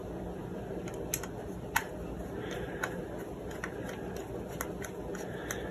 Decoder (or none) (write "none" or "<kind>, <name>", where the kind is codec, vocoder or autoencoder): none